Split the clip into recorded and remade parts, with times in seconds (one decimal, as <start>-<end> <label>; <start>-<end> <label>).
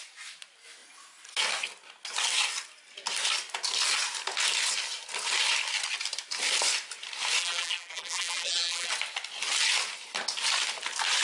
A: 0.0-7.4 recorded; 7.4-8.9 remade; 8.9-11.2 recorded